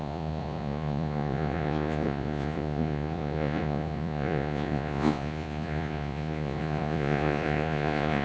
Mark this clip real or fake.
fake